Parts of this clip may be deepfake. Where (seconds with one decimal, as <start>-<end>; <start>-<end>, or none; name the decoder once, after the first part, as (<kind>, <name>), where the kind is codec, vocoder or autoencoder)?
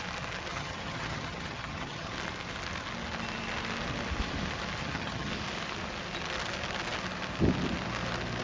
0.5-2.1 (vocoder, HiFi-GAN); 4.8-5.3